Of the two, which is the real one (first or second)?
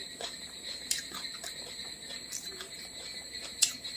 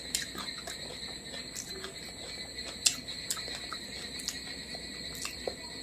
second